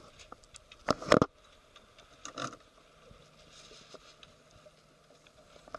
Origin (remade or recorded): recorded